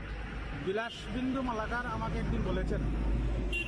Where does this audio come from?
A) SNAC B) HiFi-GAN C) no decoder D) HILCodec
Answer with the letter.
C